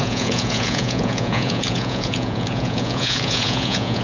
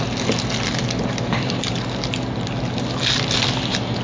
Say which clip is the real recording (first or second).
second